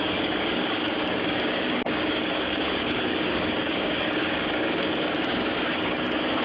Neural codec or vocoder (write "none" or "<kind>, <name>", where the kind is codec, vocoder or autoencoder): codec, DAC